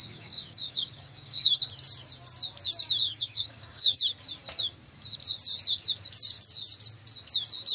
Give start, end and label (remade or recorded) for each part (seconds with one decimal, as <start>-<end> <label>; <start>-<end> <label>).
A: 0.0-1.6 remade; 1.6-3.0 recorded; 3.0-4.0 remade; 4.0-7.7 recorded